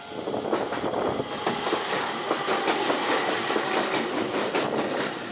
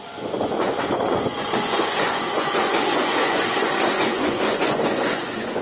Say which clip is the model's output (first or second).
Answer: second